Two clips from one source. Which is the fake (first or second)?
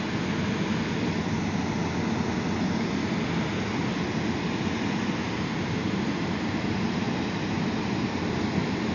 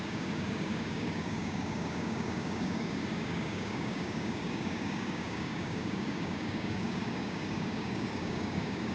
second